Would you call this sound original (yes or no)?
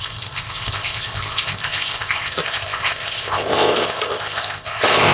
no